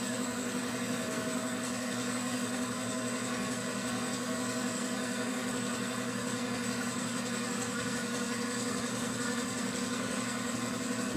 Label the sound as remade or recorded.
remade